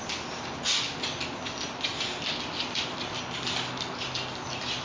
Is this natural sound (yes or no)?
yes